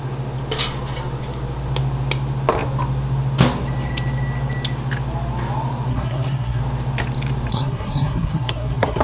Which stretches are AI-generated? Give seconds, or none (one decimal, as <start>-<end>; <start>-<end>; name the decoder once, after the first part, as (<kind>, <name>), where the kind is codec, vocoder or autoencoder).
5.9-6.6 (codec, SNAC); 7.5-9.0